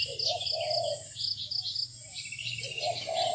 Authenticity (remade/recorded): recorded